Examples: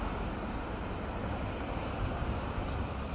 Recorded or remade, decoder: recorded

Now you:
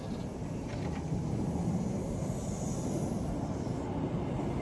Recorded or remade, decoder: recorded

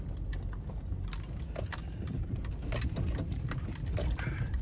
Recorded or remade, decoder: recorded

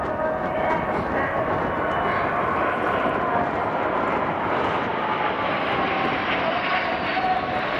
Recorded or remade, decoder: recorded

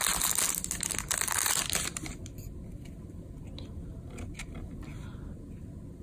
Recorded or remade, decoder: recorded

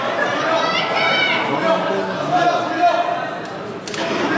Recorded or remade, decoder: recorded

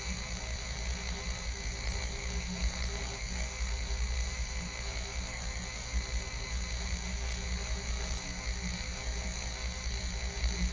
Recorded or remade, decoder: remade, codec, SNAC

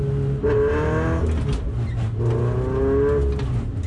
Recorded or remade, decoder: recorded